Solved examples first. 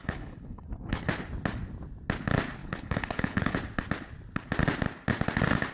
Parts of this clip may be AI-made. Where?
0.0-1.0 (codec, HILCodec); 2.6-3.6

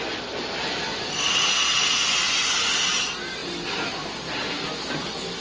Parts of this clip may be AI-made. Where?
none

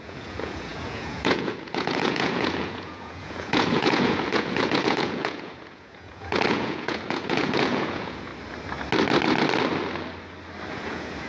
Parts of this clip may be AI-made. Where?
0.0-8.3 (vocoder, Vocos); 10.7-11.3